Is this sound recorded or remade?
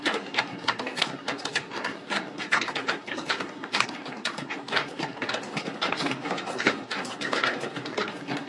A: remade